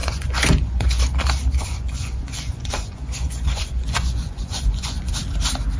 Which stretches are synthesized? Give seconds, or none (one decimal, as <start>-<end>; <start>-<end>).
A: 0.0-1.0; 1.6-5.1